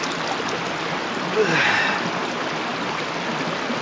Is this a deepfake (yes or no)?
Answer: no